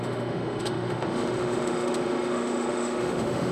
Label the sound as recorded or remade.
remade